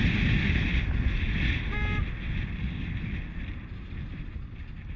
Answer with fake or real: real